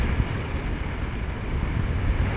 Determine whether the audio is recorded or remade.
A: recorded